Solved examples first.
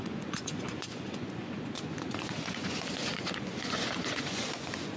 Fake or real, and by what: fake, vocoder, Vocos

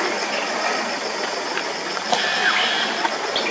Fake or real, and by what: real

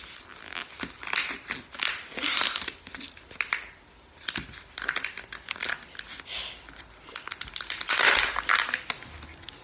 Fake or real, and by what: real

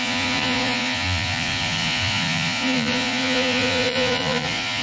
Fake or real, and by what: fake, vocoder, Vocos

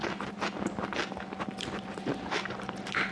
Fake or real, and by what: real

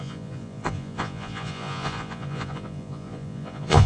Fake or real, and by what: fake, vocoder, Vocos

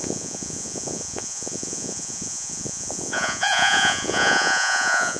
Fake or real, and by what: fake, vocoder, Vocos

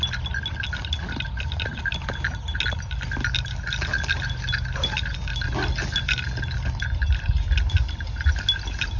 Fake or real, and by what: real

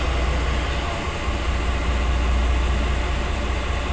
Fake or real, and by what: real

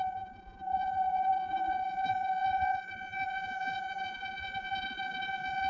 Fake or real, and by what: fake, vocoder, Vocos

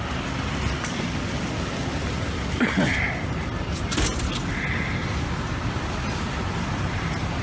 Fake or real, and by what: real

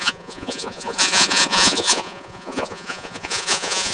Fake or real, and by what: fake, vocoder, Vocos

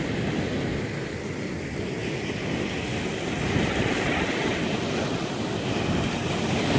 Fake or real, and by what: real